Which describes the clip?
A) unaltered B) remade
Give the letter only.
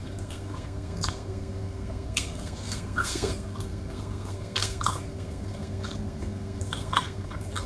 B